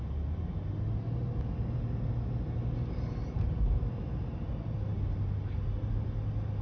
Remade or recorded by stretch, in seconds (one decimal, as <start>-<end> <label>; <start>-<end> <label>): 0.0-6.6 recorded